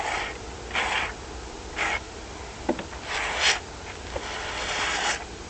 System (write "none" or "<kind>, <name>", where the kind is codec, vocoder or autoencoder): none